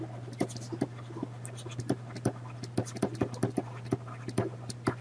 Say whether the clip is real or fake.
real